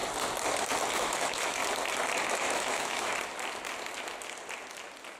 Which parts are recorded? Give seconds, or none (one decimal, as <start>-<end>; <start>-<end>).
0.0-0.9; 1.6-2.3; 3.1-5.2

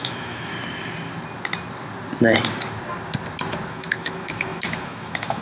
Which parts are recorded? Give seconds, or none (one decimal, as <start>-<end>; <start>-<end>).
0.5-3.7

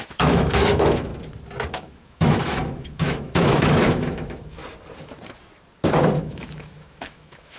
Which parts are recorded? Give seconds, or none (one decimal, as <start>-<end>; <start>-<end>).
1.1-1.7; 4.6-6.2

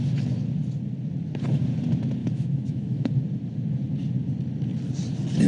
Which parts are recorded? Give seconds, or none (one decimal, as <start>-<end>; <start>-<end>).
0.0-2.2; 3.1-5.5

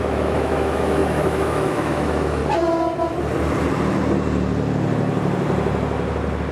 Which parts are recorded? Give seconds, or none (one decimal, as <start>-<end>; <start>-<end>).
2.4-6.5

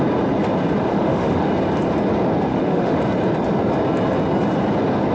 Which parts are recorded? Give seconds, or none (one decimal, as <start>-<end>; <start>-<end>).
0.0-0.9; 1.5-2.5; 3.0-5.1

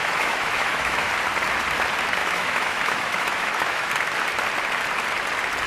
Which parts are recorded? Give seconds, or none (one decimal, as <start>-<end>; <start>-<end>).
1.1-2.2; 3.9-5.7

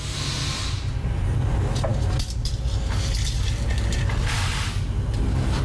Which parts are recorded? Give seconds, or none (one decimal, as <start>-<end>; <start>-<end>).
0.0-5.6